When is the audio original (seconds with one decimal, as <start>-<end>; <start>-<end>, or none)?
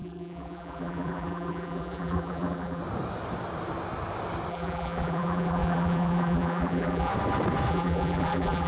2.8-4.5; 7.1-7.7